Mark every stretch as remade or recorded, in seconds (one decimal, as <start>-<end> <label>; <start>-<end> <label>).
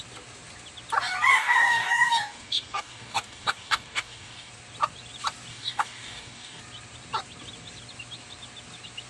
0.0-1.3 recorded; 1.3-4.5 remade; 4.5-5.5 recorded; 5.5-6.6 remade; 6.6-9.1 recorded